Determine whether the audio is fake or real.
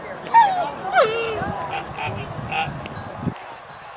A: real